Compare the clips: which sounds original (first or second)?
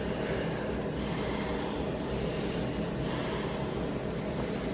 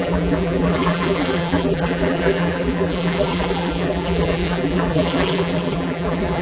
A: first